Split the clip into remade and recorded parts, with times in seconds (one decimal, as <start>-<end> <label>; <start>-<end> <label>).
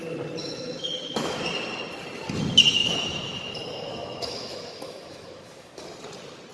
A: 0.0-0.4 recorded; 0.4-1.4 remade; 1.4-2.8 recorded; 2.8-5.8 remade; 5.8-6.5 recorded